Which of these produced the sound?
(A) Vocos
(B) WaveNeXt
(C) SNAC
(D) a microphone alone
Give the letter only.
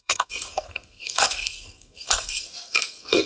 C